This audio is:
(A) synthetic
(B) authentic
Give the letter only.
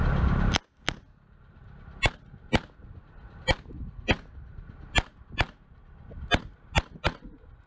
B